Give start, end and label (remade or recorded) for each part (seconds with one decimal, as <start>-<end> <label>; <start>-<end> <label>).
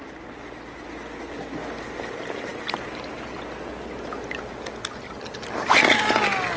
0.0-6.6 recorded